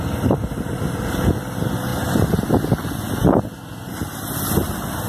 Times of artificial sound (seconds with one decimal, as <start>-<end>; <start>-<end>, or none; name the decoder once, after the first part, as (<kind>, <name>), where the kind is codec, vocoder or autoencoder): none